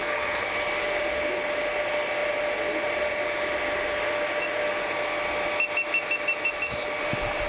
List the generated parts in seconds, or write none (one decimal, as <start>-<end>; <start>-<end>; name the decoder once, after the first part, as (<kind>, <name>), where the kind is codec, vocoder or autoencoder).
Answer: 0.0-0.5 (codec, SNAC)